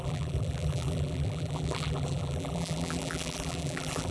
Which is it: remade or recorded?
remade